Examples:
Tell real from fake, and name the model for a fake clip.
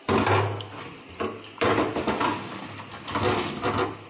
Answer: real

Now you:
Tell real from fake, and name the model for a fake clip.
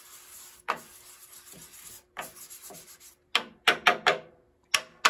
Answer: real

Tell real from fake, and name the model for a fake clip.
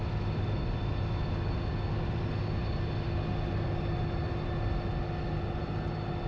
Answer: real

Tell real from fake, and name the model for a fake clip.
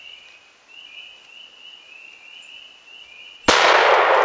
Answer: real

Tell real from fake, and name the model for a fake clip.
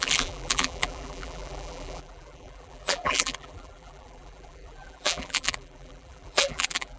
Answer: fake, vocoder, BigVGAN v2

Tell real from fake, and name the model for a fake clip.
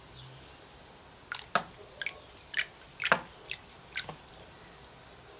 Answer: real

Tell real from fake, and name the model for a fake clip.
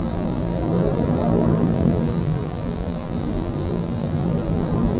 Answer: fake, vocoder, BigVGAN v2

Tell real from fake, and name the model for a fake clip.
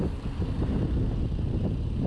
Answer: real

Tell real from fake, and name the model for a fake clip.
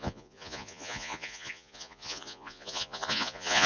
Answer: fake, vocoder, Vocos